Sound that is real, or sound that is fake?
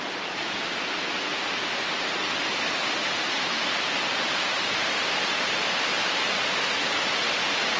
real